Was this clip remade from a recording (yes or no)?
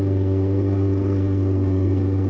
yes